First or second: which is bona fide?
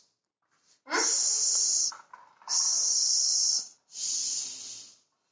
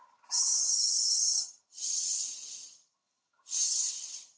first